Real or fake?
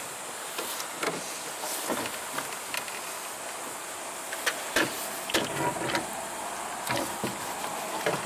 real